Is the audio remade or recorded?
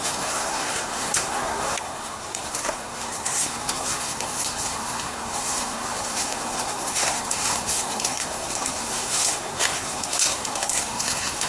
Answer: remade